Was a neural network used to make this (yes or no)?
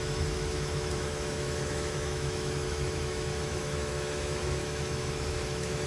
yes